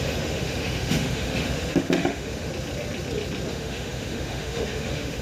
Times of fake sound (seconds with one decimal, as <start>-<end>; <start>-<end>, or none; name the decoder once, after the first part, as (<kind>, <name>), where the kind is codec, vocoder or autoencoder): 0.0-2.5 (autoencoder, DAC-VAE); 3.5-5.2